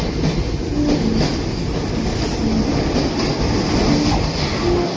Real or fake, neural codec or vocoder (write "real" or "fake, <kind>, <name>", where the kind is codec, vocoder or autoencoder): real